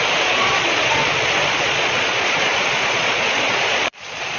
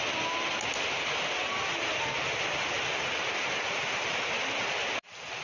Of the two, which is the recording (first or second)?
second